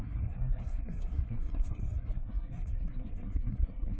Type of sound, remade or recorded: remade